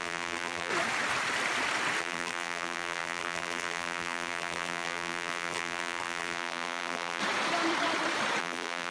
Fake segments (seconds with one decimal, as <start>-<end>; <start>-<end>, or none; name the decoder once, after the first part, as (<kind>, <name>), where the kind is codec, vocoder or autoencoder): 0.0-0.7 (vocoder, BigVGAN v2); 2.0-7.2; 8.4-8.9